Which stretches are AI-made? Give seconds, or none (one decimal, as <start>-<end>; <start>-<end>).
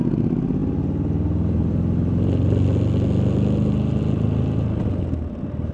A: none